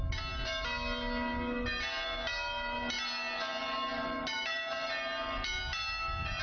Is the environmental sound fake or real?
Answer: real